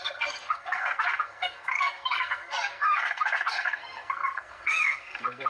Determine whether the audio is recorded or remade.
remade